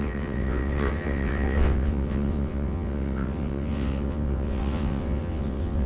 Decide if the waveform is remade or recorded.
remade